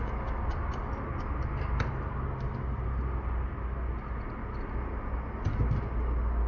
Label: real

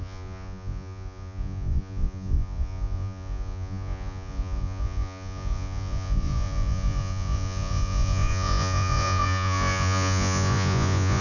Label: fake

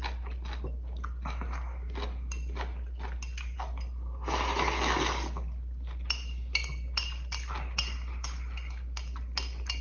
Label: real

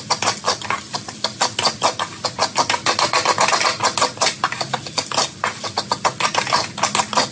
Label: real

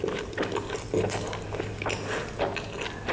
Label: real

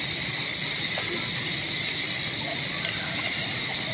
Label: real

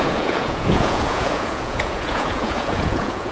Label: fake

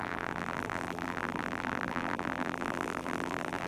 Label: fake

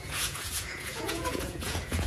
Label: fake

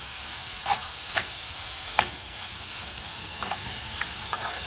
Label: fake